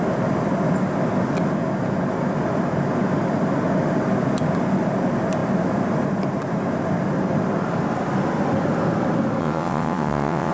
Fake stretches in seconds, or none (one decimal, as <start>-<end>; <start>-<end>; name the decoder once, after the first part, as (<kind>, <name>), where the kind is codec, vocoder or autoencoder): 9.4-10.5 (vocoder, WaveNeXt)

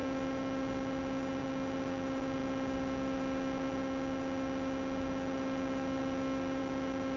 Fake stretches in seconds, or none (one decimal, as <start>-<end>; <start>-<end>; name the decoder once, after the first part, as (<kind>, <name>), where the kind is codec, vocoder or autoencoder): none

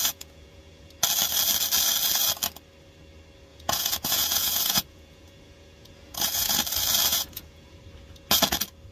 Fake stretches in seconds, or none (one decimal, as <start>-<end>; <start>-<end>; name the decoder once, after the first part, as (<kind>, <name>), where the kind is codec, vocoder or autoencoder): 0.0-0.9 (vocoder, Vocos); 3.5-6.6; 7.1-7.8

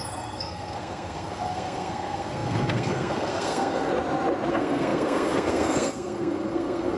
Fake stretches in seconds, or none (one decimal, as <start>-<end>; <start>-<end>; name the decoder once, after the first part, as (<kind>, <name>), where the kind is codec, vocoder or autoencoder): 0.0-3.9 (codec, SNAC); 4.5-7.0